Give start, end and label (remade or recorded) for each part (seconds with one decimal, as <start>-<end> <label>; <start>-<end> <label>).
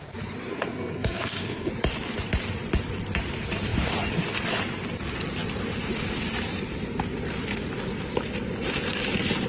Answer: 0.0-0.5 recorded; 0.5-1.7 remade; 1.7-9.5 recorded